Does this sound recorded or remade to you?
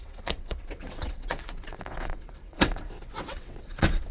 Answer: remade